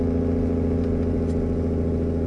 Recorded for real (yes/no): yes